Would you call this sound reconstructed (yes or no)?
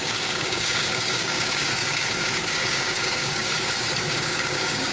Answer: yes